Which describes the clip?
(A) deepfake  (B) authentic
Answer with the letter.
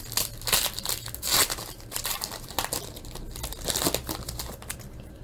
B